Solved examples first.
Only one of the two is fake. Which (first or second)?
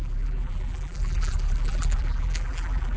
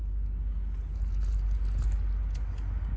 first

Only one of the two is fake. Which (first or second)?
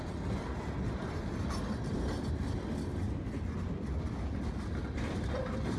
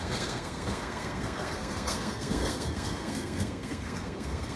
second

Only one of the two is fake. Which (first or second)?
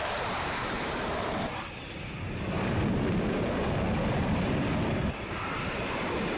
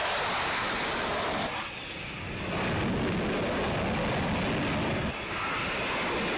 first